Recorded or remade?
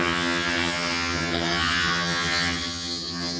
remade